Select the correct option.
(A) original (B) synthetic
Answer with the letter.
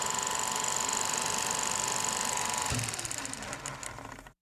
A